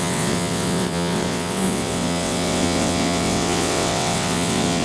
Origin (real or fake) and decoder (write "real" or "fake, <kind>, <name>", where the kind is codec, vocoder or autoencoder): fake, vocoder, WaveNeXt